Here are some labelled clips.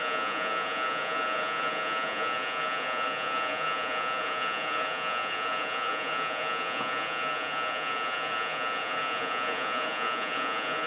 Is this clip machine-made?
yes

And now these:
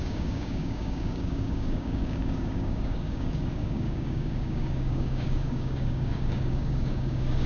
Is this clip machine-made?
yes